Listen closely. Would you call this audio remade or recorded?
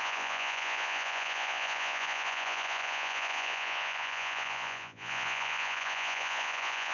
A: remade